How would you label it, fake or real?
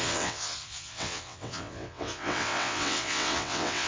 fake